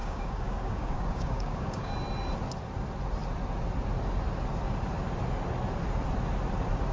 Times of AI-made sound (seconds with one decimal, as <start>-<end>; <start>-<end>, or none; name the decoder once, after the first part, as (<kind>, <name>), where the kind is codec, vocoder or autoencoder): 0.0-1.9 (codec, DAC)